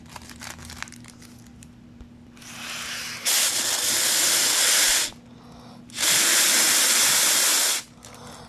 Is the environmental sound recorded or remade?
recorded